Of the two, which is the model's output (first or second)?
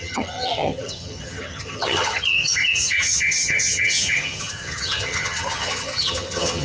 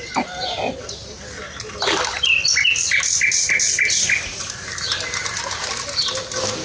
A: first